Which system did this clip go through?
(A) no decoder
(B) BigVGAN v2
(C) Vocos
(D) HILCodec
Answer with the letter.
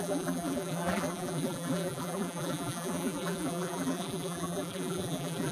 B